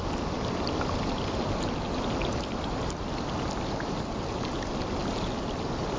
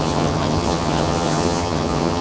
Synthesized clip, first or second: second